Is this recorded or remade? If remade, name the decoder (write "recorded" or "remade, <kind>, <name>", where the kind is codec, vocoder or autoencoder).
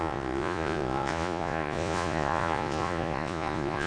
remade, vocoder, Vocos